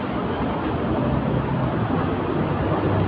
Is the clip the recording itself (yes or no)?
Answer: yes